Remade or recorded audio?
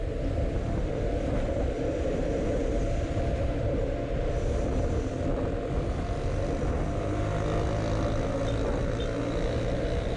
recorded